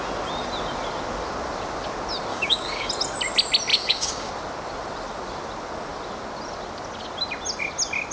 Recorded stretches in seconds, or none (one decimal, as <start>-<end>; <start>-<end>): 0.0-2.3; 2.9-3.7; 4.3-8.1